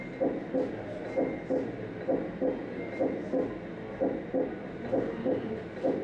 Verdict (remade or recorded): recorded